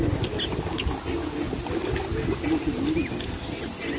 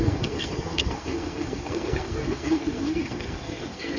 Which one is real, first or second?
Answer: first